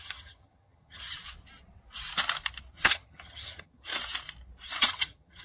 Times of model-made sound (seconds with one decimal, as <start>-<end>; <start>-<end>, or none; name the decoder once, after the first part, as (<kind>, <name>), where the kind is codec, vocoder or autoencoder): 0.0-1.0 (vocoder, HiFi-GAN); 2.7-3.9; 4.8-5.4